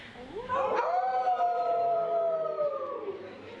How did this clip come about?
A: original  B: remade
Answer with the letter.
B